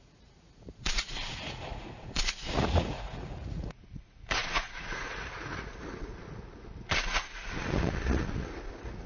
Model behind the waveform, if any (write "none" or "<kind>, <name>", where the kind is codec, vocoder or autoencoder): vocoder, Vocos